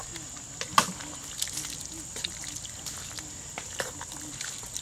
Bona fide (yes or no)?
yes